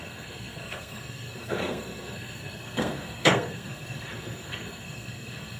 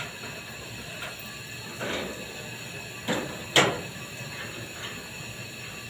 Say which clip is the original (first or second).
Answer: second